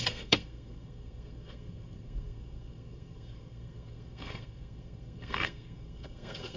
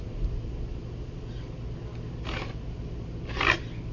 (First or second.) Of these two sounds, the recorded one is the second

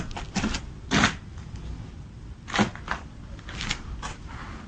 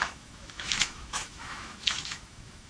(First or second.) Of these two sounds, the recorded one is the first